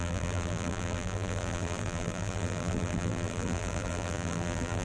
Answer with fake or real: fake